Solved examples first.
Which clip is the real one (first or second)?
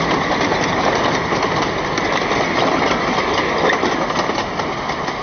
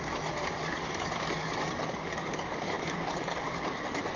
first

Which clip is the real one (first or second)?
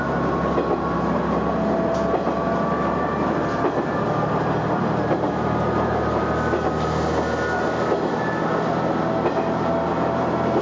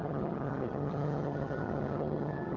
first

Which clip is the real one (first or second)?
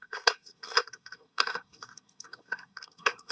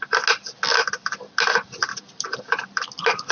second